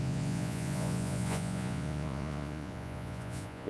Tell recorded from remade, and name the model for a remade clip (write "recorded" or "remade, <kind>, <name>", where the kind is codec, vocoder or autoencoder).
remade, vocoder, Vocos